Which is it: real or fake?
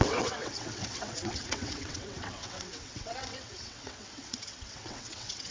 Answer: fake